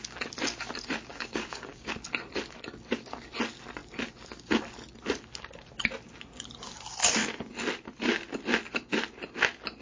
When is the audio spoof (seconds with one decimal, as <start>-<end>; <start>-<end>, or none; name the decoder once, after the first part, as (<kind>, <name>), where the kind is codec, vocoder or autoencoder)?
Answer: 1.1-1.9 (codec, DAC)